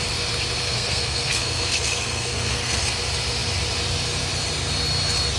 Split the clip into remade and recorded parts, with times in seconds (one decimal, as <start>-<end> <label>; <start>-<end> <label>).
0.0-0.6 recorded; 0.6-2.8 remade; 2.8-5.4 recorded

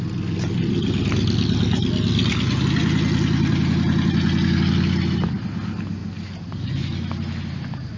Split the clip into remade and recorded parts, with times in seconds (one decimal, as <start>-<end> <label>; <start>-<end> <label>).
0.0-8.0 recorded